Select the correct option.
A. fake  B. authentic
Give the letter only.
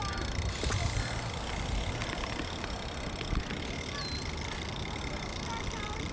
B